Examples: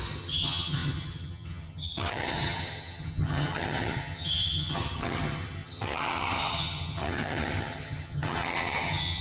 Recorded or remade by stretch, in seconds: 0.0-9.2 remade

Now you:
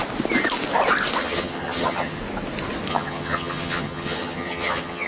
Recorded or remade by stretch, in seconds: 0.0-1.2 recorded; 1.2-2.2 remade; 2.2-2.9 recorded; 2.9-5.1 remade

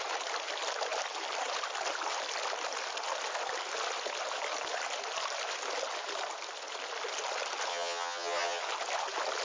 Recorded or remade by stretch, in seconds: 0.0-7.7 recorded; 7.7-8.6 remade; 8.6-9.4 recorded

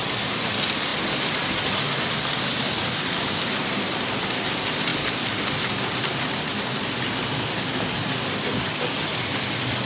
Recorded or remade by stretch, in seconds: 0.0-9.8 recorded